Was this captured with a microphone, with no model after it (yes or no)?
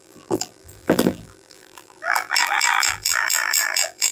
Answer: no